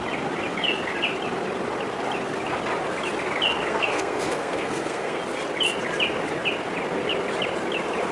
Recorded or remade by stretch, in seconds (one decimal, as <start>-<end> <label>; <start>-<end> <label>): 0.0-3.7 recorded; 3.7-5.2 remade; 5.2-8.1 recorded